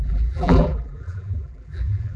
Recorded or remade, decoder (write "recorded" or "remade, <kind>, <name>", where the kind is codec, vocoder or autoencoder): remade, vocoder, BigVGAN v2